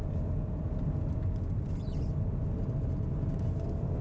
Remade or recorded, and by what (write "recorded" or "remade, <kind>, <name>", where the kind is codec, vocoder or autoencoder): recorded